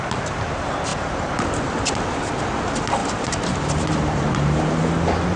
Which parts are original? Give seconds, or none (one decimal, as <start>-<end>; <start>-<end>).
0.0-0.9; 1.6-3.0; 4.7-5.4